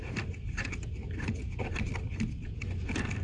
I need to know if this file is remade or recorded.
recorded